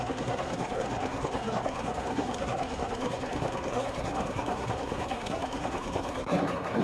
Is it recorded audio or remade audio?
remade